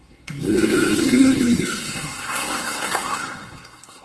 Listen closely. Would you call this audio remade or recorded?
remade